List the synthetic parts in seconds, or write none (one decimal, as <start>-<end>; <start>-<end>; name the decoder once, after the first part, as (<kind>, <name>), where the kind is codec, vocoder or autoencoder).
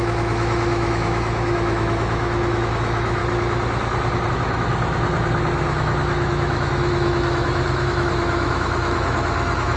0.0-3.2 (autoencoder, DAC-VAE); 4.3-9.8